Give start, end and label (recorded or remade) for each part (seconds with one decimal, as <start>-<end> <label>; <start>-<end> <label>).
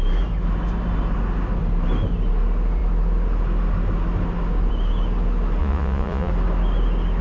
0.0-5.6 recorded; 5.6-6.3 remade; 6.3-7.2 recorded